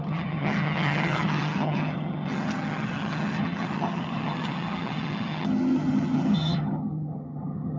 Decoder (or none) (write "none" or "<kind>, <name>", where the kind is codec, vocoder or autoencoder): vocoder, HiFi-GAN